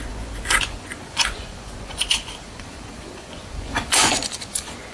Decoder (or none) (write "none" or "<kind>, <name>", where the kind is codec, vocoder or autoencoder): vocoder, Vocos